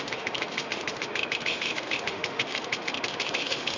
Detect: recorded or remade remade